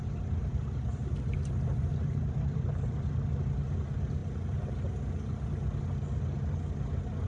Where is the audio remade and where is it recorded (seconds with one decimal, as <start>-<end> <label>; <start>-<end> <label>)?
0.0-7.3 recorded